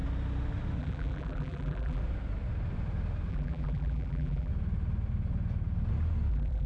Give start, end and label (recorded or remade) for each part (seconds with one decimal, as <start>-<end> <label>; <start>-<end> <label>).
0.0-0.8 recorded; 0.8-2.0 remade; 2.0-3.3 recorded; 3.3-4.5 remade; 4.5-6.3 recorded; 6.3-6.7 remade